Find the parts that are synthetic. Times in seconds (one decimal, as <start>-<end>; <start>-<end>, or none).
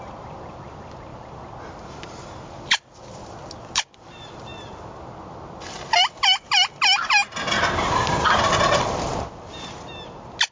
none